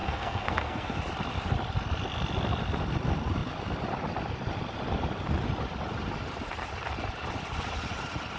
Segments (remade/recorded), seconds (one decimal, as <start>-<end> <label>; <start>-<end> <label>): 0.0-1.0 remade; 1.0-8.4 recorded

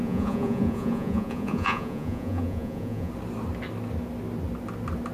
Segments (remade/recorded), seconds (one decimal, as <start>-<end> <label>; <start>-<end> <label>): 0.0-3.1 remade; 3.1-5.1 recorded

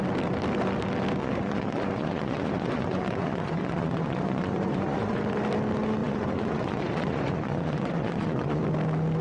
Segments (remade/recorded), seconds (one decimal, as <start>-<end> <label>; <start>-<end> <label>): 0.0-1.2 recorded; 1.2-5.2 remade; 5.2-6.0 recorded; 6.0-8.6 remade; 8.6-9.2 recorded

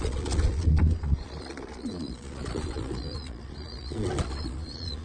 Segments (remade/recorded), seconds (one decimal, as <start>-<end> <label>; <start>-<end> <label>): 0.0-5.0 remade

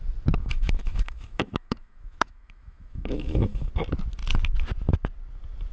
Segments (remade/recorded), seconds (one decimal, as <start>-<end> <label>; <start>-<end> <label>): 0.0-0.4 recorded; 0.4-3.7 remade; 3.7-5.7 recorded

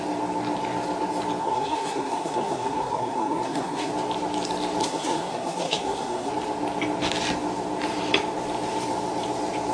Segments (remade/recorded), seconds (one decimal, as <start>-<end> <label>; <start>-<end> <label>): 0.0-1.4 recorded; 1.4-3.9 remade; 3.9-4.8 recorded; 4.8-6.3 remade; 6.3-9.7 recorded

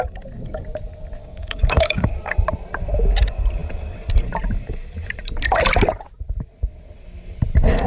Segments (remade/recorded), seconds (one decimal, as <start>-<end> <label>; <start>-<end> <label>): 0.0-1.2 recorded; 1.2-2.1 remade; 2.1-7.9 recorded